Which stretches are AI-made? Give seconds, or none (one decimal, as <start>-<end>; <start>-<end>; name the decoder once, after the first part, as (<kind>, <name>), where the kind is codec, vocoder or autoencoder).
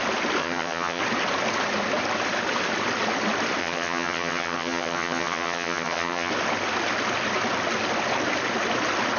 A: 0.4-1.0 (vocoder, HiFi-GAN); 3.6-6.3